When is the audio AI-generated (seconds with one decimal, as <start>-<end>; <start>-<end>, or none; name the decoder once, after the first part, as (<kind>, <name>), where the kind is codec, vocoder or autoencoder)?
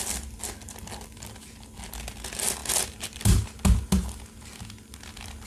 none